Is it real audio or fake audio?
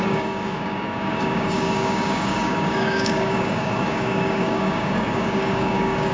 fake